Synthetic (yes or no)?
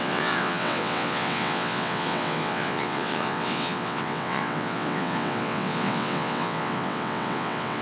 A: yes